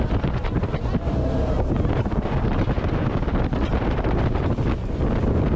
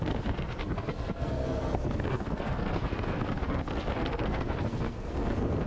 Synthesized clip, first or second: second